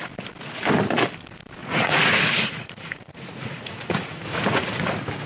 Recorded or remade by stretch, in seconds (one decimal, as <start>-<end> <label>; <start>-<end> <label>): 0.0-1.6 recorded; 1.6-4.8 remade; 4.8-5.3 recorded